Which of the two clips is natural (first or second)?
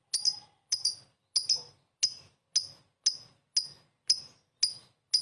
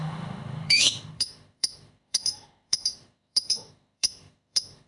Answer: first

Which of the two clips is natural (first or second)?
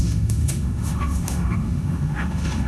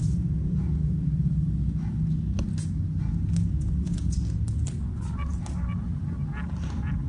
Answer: second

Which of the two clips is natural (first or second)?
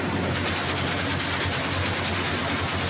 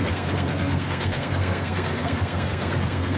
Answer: first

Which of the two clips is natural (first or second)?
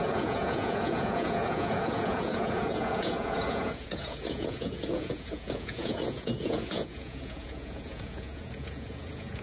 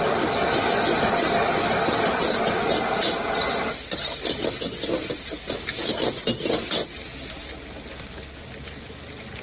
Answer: second